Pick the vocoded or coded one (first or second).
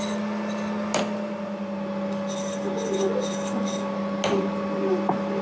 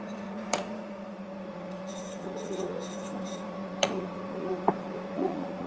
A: second